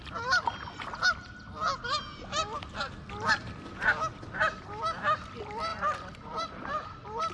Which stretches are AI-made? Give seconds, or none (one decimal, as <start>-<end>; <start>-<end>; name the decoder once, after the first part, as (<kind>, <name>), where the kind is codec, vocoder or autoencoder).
5.7-7.3 (vocoder, BigVGAN v2)